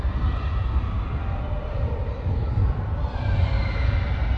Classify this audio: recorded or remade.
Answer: recorded